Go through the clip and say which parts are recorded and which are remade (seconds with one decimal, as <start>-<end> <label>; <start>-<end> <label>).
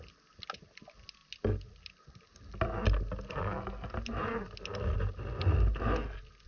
0.0-6.5 recorded